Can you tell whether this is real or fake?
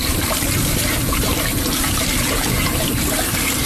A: fake